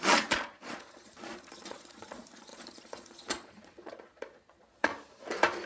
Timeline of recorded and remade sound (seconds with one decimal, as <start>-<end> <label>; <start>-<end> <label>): 0.0-4.9 remade; 4.9-5.7 recorded